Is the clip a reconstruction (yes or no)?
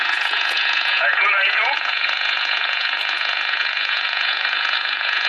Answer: yes